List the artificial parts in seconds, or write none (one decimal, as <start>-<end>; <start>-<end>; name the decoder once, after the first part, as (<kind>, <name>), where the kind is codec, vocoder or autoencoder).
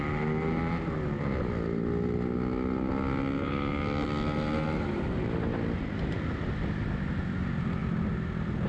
none